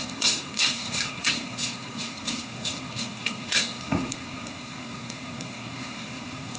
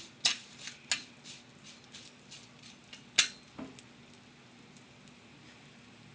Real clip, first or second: second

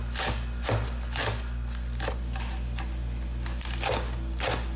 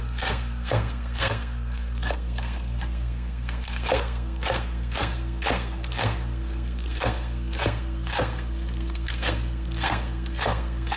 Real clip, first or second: first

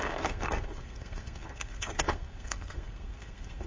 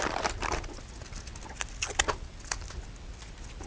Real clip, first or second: second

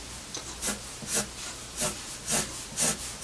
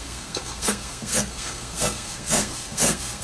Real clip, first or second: first